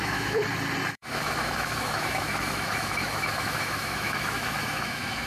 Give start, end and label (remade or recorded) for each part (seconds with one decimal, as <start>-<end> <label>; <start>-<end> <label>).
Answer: 0.0-0.4 remade; 0.4-0.9 recorded; 0.9-5.3 remade